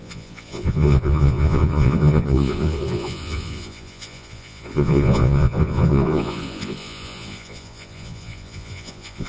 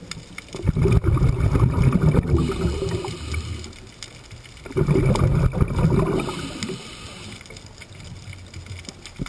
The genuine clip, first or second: second